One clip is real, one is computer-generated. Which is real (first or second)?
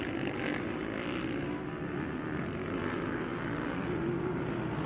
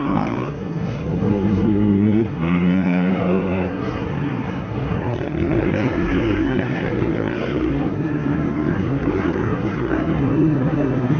first